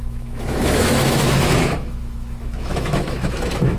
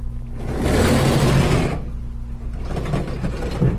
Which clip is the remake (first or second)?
first